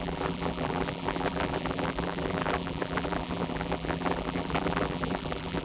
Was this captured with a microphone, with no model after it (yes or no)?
no